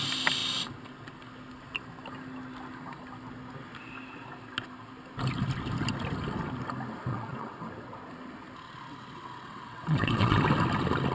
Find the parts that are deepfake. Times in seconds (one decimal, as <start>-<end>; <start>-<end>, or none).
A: 7.1-7.7; 8.9-10.4